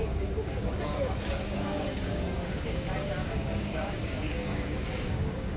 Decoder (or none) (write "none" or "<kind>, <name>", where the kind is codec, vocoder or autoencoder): codec, DAC